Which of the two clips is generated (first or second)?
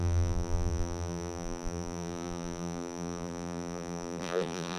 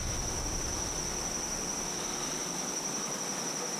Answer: first